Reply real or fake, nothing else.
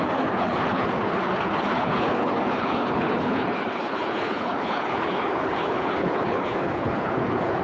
fake